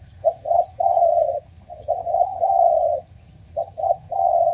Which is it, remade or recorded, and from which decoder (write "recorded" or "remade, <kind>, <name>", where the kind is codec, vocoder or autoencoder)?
remade, vocoder, HiFi-GAN